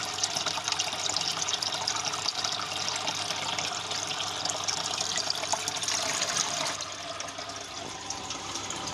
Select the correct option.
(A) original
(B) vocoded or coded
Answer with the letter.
A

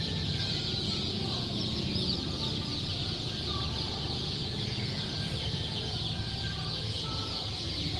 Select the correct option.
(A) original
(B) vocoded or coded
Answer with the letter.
B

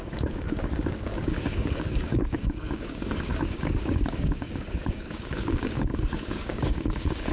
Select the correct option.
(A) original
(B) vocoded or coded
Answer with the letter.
B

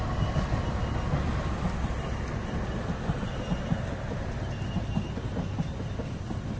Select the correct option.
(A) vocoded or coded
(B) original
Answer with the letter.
B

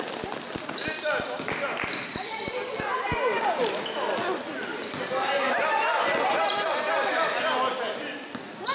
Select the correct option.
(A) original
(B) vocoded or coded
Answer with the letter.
A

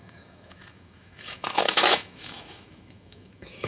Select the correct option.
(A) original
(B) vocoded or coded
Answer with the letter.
B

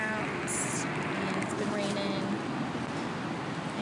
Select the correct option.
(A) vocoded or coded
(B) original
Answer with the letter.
B